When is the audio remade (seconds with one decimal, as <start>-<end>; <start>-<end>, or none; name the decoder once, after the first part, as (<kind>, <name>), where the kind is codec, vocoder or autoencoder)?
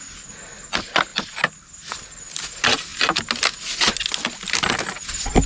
none